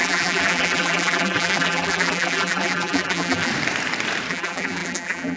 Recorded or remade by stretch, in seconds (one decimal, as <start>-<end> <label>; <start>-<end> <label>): 0.0-3.5 remade; 3.5-4.3 recorded; 4.3-5.4 remade